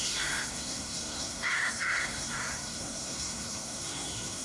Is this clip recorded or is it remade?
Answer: remade